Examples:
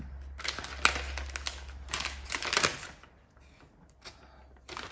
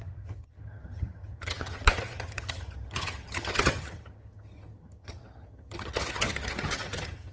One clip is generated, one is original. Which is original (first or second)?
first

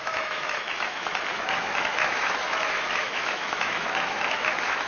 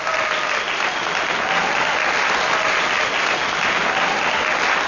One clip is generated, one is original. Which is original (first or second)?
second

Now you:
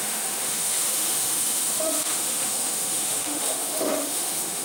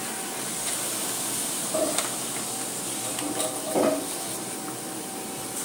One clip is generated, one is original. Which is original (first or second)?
second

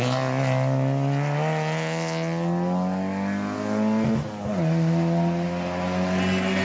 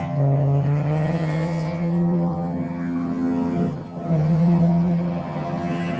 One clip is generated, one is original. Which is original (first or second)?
first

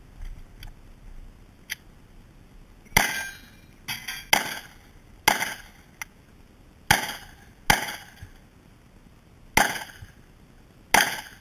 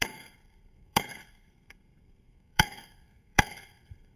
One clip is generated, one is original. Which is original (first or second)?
first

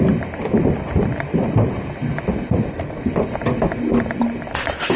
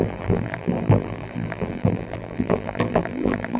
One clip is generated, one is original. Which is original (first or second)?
first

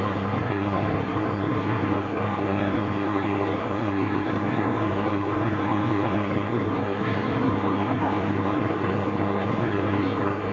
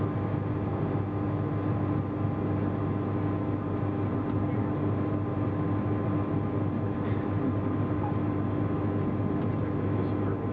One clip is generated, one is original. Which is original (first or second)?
second